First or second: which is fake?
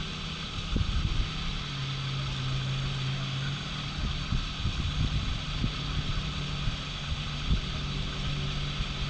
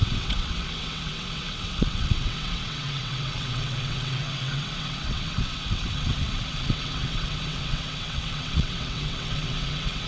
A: second